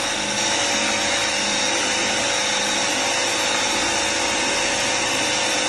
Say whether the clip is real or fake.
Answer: real